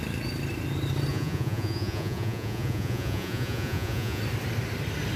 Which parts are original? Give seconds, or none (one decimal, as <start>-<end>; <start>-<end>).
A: 0.0-1.1; 4.2-5.2